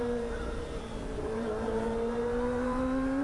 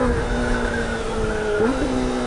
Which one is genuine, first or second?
second